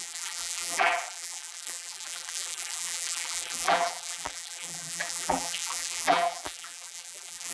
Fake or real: fake